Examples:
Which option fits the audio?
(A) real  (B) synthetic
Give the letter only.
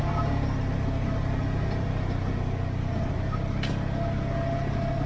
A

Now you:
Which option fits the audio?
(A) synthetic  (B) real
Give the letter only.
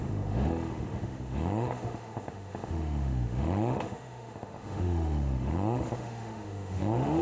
A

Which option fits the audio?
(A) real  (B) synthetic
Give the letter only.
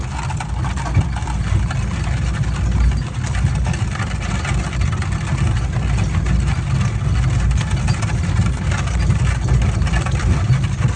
A